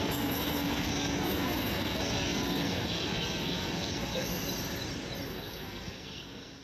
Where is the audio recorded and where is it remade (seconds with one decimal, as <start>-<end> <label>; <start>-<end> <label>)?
0.0-4.3 remade; 4.3-5.3 recorded; 5.3-6.6 remade